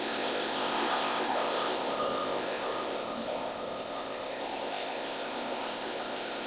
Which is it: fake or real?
fake